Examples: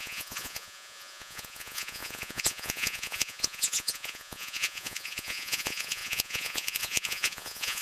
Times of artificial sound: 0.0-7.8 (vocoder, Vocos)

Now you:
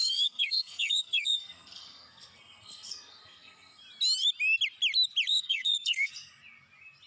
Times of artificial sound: 0.0-3.8 (codec, SNAC); 5.3-6.1

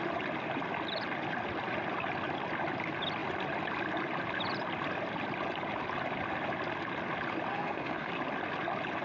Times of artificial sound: 7.5-8.1 (codec, SNAC)

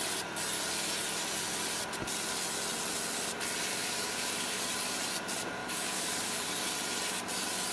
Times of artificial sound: 3.7-4.6 (codec, DAC); 5.6-6.5

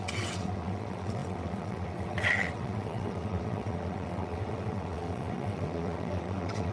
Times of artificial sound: 0.0-6.7 (vocoder, WaveNeXt)

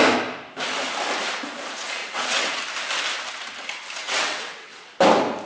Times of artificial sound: 2.0-2.6 (vocoder, WaveNeXt); 4.0-4.9

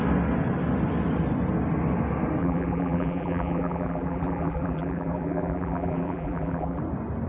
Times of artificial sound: 2.4-6.8 (vocoder, BigVGAN v2)

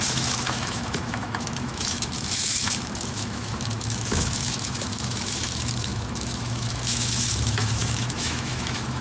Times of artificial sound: 0.0-9.0 (autoencoder, DAC-VAE)